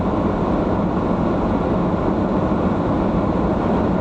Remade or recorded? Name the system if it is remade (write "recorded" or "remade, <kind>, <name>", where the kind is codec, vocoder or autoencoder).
recorded